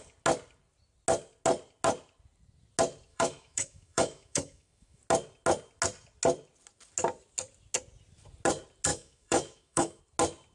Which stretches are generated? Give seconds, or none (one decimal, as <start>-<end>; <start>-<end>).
3.1-5.0; 8.9-10.0